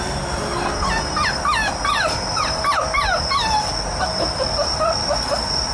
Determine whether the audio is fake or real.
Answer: real